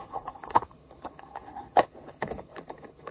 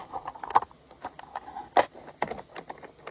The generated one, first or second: first